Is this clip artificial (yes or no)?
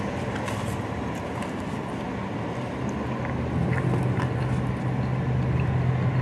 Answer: no